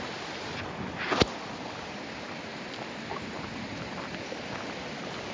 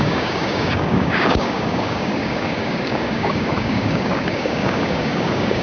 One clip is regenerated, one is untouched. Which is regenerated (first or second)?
second